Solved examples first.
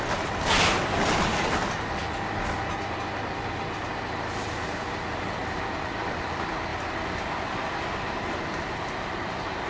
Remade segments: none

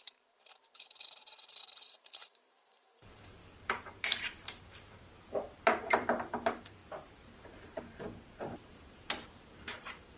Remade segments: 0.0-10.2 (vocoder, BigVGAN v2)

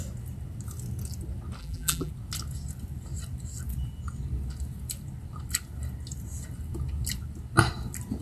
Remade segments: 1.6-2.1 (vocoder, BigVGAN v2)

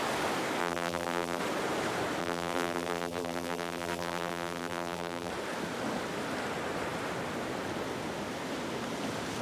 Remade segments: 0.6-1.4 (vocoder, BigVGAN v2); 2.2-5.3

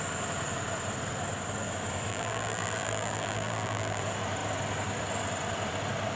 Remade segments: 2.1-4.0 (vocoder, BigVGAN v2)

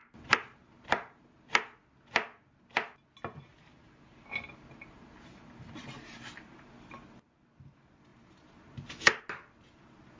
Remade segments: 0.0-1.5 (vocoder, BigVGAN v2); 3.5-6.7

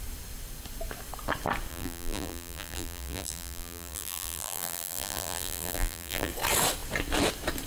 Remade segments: 1.7-6.3 (vocoder, BigVGAN v2)

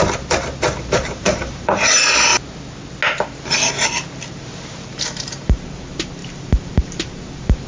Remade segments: 0.7-2.3 (vocoder, BigVGAN v2); 4.1-7.7